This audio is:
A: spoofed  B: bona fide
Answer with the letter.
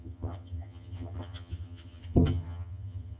A